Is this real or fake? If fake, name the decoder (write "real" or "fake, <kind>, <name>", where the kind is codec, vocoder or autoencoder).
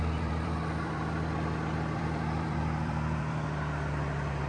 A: fake, vocoder, BigVGAN v2